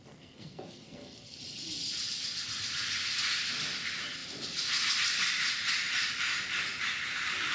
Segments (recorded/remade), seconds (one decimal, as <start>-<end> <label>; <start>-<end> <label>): 0.0-1.4 remade; 1.4-7.5 recorded